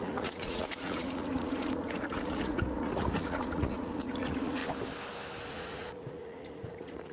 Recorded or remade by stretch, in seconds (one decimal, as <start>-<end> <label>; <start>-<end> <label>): 0.0-4.6 remade; 4.6-5.5 recorded; 5.5-7.1 remade